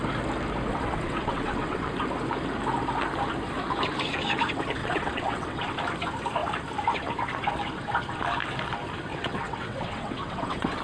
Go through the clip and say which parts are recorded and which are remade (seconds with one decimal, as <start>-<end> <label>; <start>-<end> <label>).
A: 0.0-0.7 recorded; 0.7-1.9 remade; 1.9-4.8 recorded; 4.8-5.6 remade; 5.6-9.1 recorded; 9.1-10.8 remade

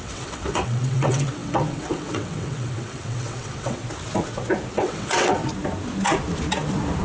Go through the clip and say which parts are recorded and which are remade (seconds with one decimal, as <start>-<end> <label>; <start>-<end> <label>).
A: 0.0-3.8 remade; 3.8-4.7 recorded; 4.7-5.4 remade; 5.4-7.0 recorded

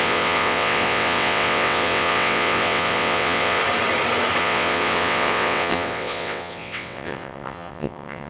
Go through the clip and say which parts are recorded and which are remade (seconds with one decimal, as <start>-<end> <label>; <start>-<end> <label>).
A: 0.0-3.6 remade; 3.6-4.4 recorded; 4.4-8.3 remade

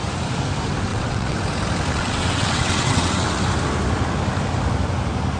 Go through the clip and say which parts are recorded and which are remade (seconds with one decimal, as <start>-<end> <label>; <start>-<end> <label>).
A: 0.0-0.9 recorded; 0.9-1.4 remade; 1.4-1.9 recorded; 1.9-3.4 remade; 3.4-5.4 recorded

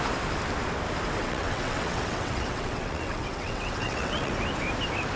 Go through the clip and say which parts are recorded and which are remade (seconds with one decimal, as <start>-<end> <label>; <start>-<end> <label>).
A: 0.0-1.2 recorded; 1.2-4.3 remade; 4.3-5.2 recorded

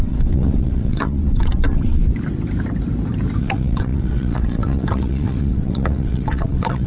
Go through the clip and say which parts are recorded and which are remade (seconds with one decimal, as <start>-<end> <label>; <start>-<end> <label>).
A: 0.0-2.0 remade; 2.0-3.4 recorded; 3.4-6.9 remade

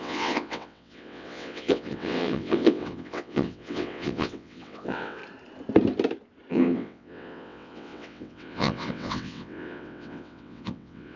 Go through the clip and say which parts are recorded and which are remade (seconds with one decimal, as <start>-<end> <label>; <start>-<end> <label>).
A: 0.0-5.2 remade; 5.2-6.5 recorded; 6.5-11.2 remade